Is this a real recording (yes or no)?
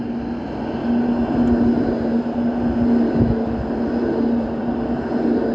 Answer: yes